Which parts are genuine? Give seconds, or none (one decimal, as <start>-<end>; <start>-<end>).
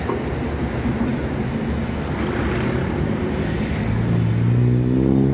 0.0-5.3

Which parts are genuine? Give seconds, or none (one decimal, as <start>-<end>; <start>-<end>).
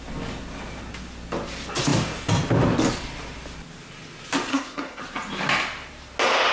0.0-4.5; 5.0-6.5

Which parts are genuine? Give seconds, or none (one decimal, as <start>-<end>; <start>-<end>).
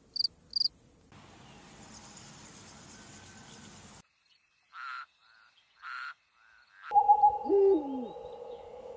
0.0-8.4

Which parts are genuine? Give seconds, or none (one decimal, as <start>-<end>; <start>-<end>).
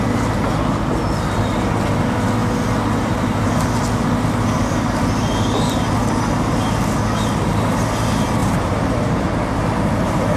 0.0-8.4; 9.6-10.4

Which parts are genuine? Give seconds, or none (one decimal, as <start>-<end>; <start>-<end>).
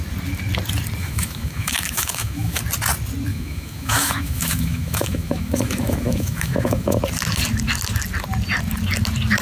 0.0-1.0; 2.6-3.3; 7.0-9.4